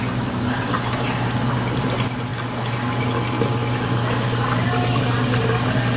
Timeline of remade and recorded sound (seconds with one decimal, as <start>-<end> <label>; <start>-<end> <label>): 0.0-6.0 recorded